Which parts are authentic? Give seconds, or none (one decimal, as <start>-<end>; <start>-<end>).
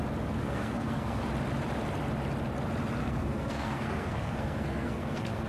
0.0-0.4; 1.2-3.0